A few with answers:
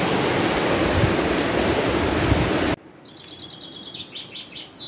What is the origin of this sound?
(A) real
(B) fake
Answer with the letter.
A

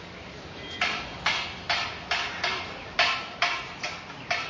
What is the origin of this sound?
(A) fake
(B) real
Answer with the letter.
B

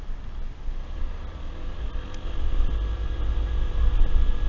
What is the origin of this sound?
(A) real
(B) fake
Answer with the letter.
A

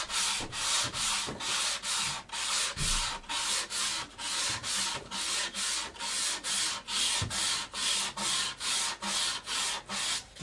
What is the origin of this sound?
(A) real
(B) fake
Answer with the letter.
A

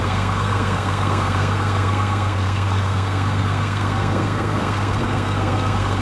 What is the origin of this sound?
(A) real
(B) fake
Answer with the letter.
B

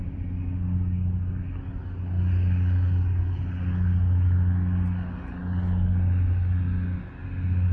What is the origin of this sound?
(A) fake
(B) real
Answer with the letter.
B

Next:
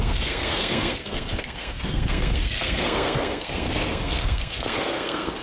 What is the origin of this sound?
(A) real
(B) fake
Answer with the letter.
B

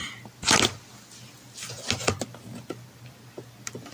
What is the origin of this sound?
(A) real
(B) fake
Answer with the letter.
A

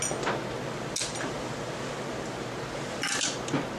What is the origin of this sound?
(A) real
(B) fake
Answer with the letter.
A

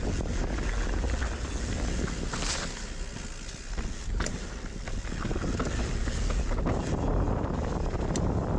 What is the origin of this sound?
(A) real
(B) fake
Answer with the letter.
A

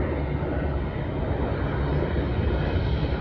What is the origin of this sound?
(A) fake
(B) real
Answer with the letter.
B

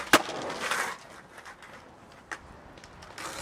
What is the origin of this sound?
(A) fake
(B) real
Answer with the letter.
B